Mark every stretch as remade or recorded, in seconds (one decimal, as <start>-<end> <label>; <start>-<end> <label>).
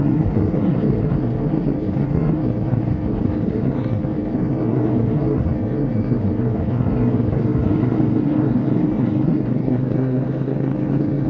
0.0-11.3 remade